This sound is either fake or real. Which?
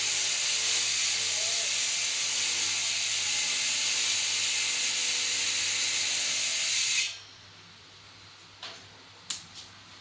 real